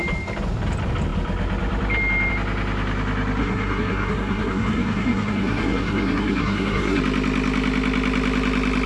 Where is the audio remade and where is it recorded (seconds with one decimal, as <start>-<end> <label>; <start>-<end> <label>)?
0.0-3.4 recorded; 3.4-7.0 remade; 7.0-8.9 recorded